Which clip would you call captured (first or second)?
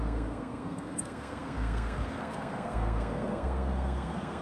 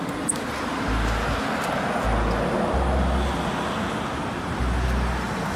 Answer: second